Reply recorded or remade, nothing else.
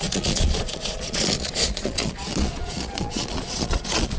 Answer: remade